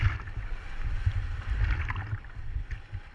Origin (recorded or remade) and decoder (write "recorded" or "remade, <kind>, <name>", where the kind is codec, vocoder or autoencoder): recorded